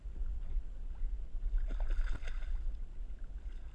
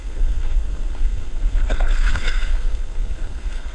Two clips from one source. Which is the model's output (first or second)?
second